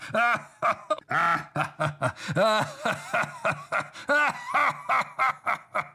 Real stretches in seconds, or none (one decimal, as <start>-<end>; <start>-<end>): 0.0-5.9